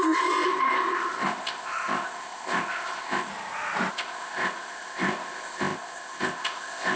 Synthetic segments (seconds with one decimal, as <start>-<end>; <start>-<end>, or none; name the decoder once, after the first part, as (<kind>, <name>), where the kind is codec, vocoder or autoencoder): 0.0-3.3 (codec, ZipCodec); 3.9-7.0